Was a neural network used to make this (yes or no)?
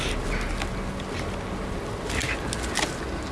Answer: no